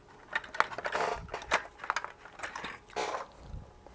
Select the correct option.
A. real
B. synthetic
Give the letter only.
A